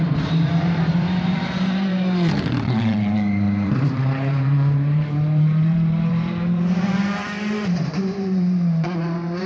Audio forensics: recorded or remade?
remade